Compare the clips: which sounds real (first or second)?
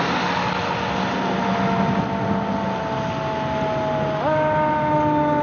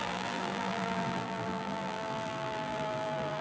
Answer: first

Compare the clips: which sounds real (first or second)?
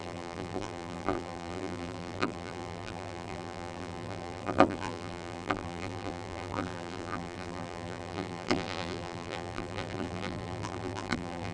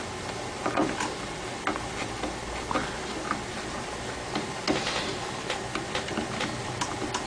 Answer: second